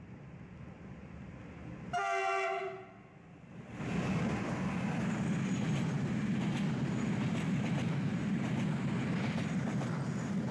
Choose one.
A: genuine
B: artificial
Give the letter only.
A